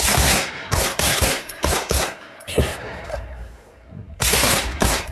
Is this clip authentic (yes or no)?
no